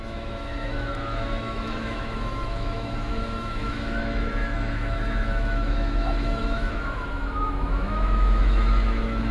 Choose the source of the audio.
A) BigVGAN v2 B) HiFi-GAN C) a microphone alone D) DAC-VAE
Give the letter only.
D